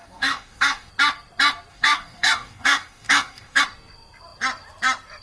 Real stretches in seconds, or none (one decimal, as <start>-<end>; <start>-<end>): 0.9-1.7; 3.6-5.2